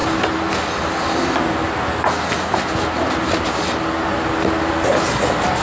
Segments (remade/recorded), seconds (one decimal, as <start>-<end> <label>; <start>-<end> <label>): 0.0-5.6 recorded